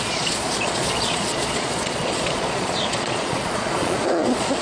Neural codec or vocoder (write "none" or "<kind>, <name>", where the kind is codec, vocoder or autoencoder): vocoder, Vocos